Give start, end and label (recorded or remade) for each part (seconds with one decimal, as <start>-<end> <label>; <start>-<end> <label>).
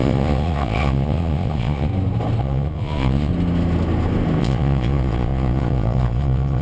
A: 0.0-1.9 remade; 1.9-2.4 recorded; 2.4-3.3 remade; 3.3-4.4 recorded; 4.4-6.6 remade